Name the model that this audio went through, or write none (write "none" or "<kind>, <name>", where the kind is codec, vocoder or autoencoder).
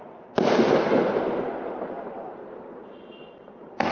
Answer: none